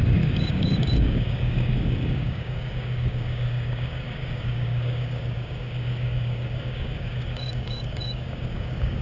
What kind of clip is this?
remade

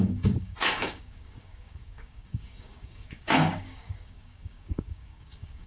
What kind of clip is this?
remade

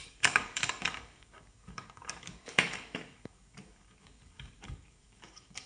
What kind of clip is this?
remade